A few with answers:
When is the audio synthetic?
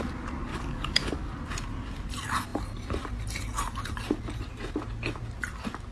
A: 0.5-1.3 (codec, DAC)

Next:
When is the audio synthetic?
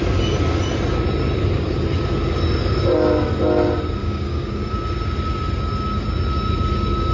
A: 4.0-4.7 (codec, DAC)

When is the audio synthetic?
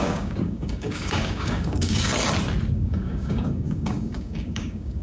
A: 0.0-2.1 (codec, DAC); 2.7-5.0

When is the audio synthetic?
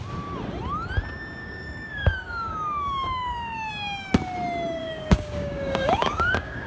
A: 1.4-3.7 (codec, DAC); 4.8-6.7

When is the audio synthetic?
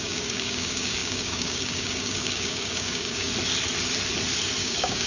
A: 0.0-3.3 (codec, DAC); 4.6-5.1